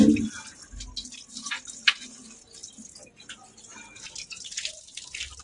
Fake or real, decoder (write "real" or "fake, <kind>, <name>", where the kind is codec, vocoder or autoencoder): real